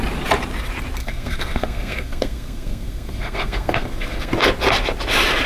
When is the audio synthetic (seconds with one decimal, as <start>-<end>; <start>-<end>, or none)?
1.0-4.3